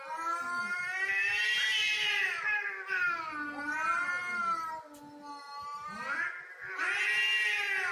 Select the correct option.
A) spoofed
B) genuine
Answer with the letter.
B